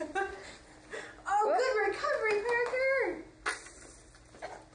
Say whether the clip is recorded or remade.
recorded